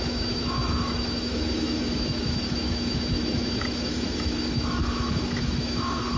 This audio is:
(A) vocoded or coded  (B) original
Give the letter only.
A